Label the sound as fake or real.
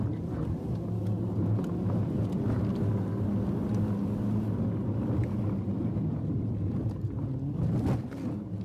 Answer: real